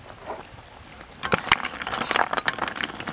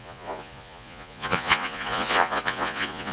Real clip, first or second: first